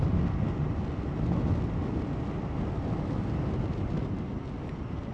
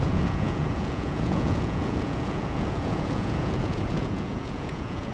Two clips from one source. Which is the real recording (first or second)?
first